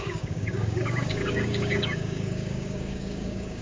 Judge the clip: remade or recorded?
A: remade